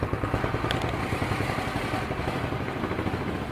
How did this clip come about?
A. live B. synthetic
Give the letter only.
A